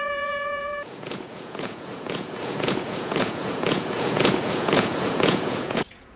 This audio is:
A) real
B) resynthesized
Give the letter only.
B